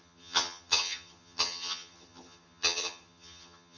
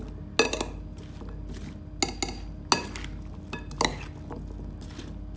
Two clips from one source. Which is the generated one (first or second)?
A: first